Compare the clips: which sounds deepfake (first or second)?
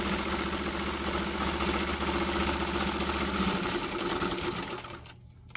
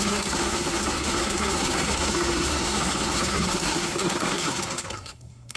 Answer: second